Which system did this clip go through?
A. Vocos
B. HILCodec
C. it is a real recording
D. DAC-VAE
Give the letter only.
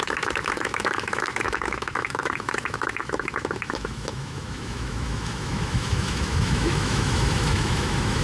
D